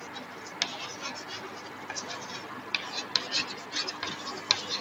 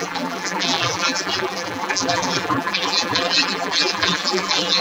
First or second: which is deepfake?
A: second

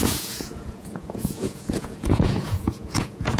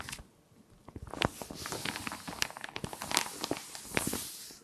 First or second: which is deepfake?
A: first